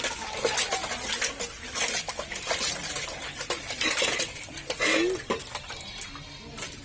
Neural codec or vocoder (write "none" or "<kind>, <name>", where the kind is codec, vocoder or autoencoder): none